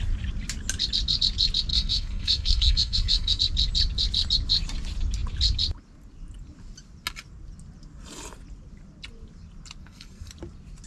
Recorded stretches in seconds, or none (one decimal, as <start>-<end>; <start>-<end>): 0.0-1.7; 3.4-9.8; 10.3-10.9